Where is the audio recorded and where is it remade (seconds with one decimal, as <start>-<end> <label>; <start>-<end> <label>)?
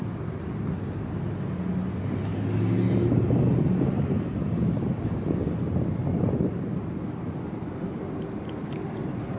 0.0-9.4 recorded